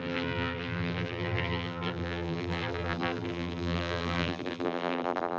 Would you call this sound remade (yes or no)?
yes